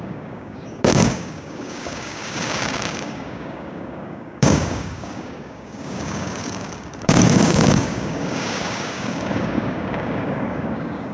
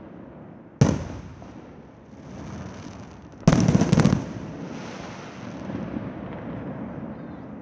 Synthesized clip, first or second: first